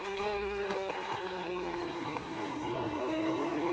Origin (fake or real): fake